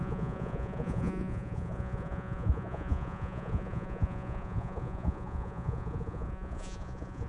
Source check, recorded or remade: remade